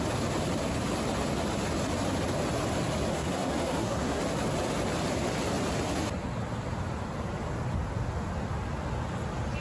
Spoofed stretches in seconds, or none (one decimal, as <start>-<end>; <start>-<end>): 3.1-4.2